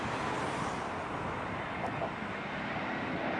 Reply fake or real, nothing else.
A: real